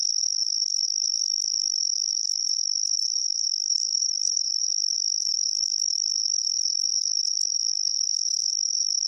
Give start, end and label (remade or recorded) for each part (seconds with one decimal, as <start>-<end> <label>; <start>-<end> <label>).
0.0-3.2 recorded; 3.2-4.5 remade; 4.5-9.1 recorded